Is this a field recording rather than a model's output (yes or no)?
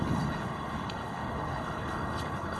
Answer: no